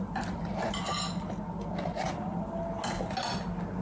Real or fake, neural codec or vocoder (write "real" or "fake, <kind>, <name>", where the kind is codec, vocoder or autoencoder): real